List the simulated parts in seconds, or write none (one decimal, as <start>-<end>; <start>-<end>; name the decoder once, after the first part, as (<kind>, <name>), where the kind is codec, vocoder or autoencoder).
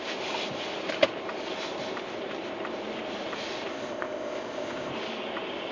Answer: 3.7-4.9 (codec, ZipCodec)